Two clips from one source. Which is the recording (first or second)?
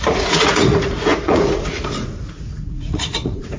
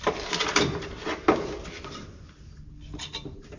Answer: second